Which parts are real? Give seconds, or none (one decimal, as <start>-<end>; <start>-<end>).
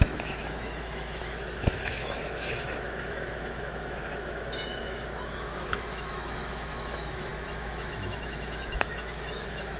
none